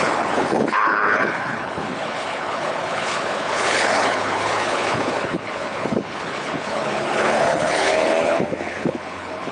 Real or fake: fake